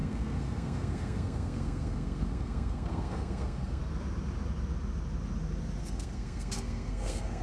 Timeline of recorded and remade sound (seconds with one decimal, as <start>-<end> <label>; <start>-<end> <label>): 0.0-3.8 remade; 3.8-5.8 recorded; 5.8-7.4 remade